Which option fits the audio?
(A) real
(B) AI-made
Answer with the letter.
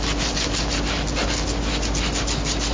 A